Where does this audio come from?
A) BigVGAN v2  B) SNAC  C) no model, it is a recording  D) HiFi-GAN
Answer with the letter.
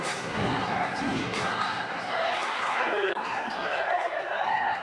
B